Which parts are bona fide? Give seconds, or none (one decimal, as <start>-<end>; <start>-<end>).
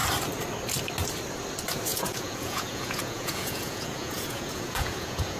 0.0-1.9